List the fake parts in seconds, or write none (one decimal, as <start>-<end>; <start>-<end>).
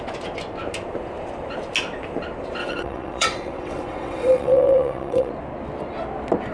2.6-5.3